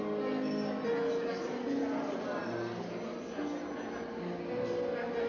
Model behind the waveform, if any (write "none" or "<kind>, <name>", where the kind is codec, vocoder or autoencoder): none